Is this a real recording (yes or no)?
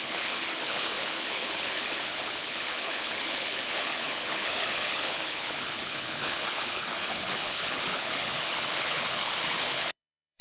no